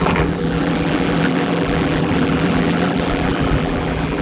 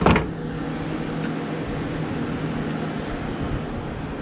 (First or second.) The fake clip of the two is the first